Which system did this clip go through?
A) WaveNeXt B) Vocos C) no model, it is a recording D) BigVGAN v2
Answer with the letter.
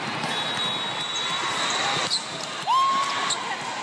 C